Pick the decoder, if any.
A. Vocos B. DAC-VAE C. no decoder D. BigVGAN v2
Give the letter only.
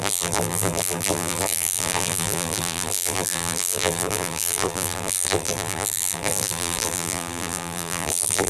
D